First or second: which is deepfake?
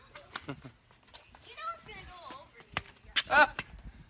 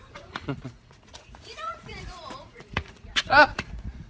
second